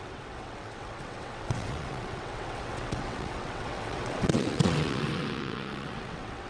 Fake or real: fake